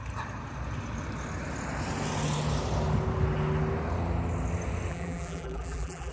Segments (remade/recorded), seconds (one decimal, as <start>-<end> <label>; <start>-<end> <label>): 0.0-4.9 recorded; 4.9-6.1 remade